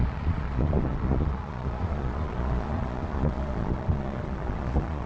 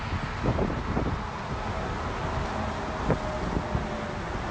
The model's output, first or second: first